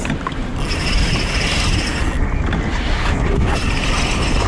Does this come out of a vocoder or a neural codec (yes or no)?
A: no